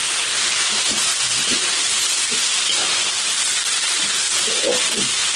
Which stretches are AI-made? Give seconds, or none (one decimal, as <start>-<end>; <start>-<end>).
none